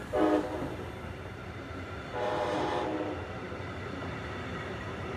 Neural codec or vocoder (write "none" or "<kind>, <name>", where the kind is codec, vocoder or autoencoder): vocoder, BigVGAN v2